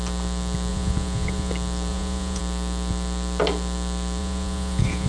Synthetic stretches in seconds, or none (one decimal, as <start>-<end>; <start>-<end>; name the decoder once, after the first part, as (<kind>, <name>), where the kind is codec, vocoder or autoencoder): 0.7-1.5 (vocoder, Vocos); 1.9-2.4; 4.2-5.1